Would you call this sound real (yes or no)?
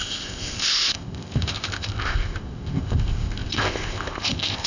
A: no